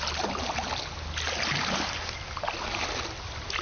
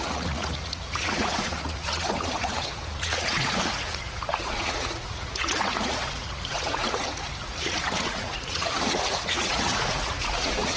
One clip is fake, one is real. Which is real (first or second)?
first